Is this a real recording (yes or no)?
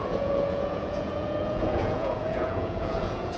no